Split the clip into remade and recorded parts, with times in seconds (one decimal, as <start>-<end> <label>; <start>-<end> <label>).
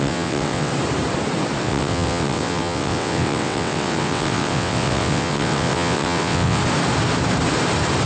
0.0-0.7 remade; 0.7-1.6 recorded; 1.6-6.6 remade; 6.6-8.1 recorded